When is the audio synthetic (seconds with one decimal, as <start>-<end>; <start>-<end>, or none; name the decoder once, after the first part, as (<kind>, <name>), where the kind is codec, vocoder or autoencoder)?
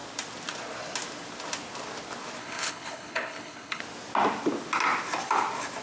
2.4-3.8 (codec, HILCodec)